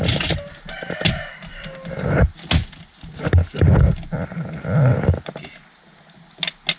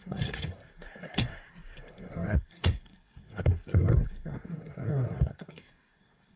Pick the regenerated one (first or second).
second